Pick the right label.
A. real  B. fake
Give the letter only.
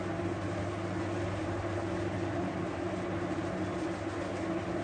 A